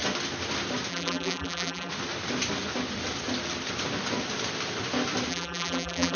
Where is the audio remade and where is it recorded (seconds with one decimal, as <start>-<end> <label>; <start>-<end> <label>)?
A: 0.0-0.9 recorded; 0.9-1.9 remade; 1.9-5.3 recorded; 5.3-6.2 remade

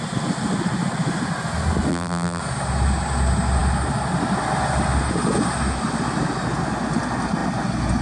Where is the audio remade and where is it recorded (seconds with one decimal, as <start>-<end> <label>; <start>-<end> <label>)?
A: 0.0-1.9 recorded; 1.9-2.4 remade; 2.4-8.0 recorded

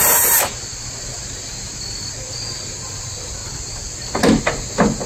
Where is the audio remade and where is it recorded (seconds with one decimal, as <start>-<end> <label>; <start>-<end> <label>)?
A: 0.0-5.1 recorded

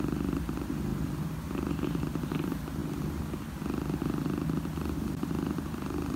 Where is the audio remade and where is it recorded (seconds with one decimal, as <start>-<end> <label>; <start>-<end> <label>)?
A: 0.0-2.8 remade; 2.8-5.0 recorded; 5.0-6.2 remade

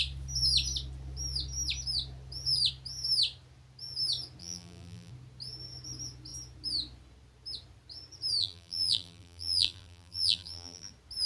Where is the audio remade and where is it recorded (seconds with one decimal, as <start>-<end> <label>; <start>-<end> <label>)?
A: 0.0-4.4 recorded; 4.4-5.1 remade; 5.1-8.4 recorded; 8.4-10.9 remade; 10.9-11.3 recorded